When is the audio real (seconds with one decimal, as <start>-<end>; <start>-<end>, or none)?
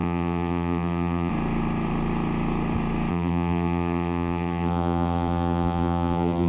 1.3-3.1